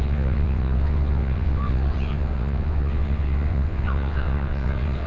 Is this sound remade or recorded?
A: remade